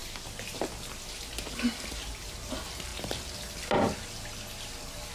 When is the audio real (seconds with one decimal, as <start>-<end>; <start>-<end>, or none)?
0.0-5.1